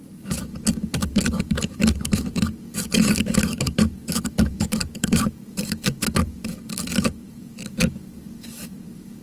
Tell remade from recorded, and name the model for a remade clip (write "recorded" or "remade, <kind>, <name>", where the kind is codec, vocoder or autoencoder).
remade, codec, DAC